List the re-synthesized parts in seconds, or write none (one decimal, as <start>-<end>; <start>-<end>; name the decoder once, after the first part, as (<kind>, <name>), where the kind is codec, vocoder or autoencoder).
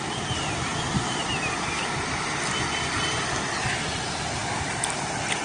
none